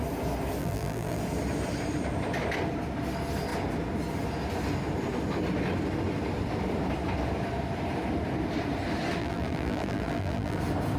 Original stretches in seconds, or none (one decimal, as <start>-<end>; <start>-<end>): 0.0-0.6; 1.2-9.2; 10.6-11.0